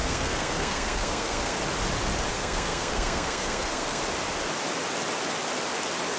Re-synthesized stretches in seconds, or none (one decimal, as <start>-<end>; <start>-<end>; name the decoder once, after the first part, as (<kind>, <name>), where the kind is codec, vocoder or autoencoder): 0.0-1.6 (codec, SNAC); 2.3-4.0

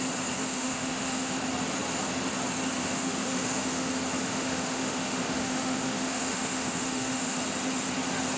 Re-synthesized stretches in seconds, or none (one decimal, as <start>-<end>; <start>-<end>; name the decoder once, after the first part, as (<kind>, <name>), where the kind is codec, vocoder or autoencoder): 0.4-1.4 (autoencoder, DAC-VAE); 2.8-3.9; 4.3-7.4

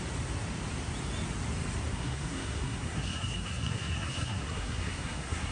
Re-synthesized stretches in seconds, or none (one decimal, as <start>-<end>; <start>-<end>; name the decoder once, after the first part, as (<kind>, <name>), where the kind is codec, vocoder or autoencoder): 1.9-5.5 (codec, SNAC)

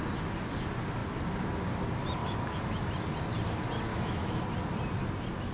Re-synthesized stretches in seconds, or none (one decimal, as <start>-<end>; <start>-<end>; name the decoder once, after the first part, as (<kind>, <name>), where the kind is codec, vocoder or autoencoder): 2.2-2.9 (autoencoder, DAC-VAE); 3.9-4.4

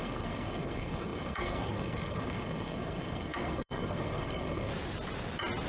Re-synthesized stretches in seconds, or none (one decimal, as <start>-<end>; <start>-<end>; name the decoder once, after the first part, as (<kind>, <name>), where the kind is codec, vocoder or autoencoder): 0.0-4.7 (codec, SNAC)

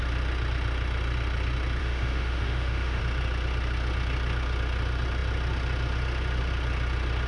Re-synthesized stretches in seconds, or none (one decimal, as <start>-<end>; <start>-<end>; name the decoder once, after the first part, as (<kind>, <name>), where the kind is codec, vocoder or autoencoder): 1.8-3.0 (autoencoder, DAC-VAE)

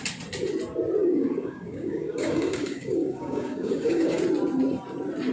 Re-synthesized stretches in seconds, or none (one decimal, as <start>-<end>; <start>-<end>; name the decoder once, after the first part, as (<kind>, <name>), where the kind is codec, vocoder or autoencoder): 1.0-4.2 (codec, DAC)